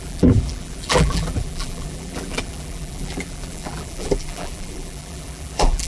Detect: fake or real fake